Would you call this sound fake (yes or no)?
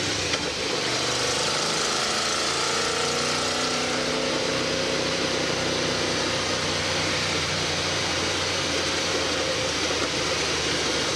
yes